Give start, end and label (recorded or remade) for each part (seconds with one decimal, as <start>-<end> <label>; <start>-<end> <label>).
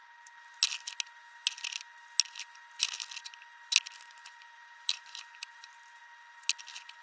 0.0-4.2 recorded; 4.2-6.0 remade; 6.0-7.0 recorded